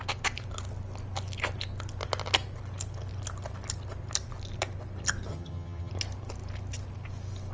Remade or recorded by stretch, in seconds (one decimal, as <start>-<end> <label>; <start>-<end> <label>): 0.0-5.3 recorded; 5.3-5.9 remade; 5.9-7.5 recorded